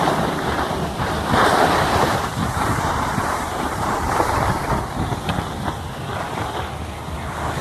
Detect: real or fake fake